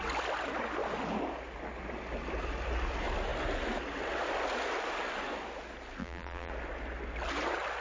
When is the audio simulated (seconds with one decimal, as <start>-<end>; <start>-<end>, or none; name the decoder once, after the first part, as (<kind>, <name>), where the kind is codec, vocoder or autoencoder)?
6.0-6.5 (vocoder, BigVGAN v2)